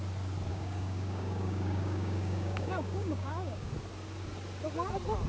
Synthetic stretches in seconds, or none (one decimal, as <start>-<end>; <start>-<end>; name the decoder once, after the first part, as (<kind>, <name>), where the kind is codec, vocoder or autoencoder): 0.5-3.7 (codec, DAC)